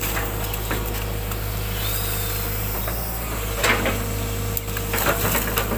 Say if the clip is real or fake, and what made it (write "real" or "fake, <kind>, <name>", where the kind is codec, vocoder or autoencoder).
real